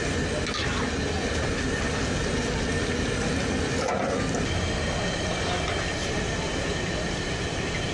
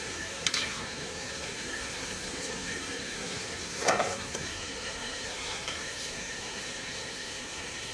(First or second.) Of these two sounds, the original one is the first